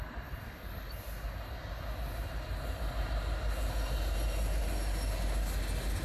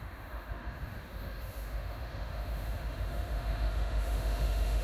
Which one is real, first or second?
first